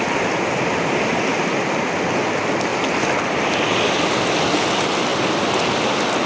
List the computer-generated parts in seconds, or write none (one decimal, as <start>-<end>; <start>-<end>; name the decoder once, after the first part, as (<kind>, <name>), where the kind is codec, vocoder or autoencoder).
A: 1.3-2.3 (vocoder, BigVGAN v2); 2.7-4.1